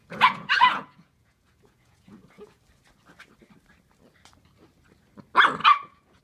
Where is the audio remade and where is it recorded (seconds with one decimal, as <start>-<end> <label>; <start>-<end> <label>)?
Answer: 0.0-2.6 remade; 2.6-5.6 recorded; 5.6-6.2 remade